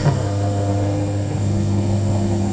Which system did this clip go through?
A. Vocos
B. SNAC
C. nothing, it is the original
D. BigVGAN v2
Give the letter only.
B